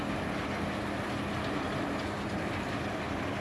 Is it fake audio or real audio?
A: real